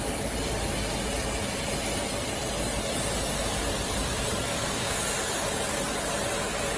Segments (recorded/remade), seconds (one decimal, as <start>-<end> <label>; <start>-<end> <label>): 0.0-4.5 recorded; 4.5-5.0 remade; 5.0-6.8 recorded